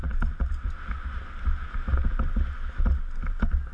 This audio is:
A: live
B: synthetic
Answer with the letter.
A